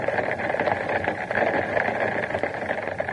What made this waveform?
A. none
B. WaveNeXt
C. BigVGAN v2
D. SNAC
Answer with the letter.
A